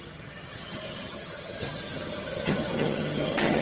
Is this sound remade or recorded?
remade